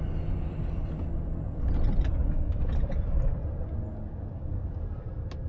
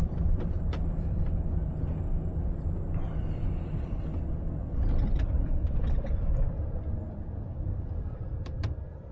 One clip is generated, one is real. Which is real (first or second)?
first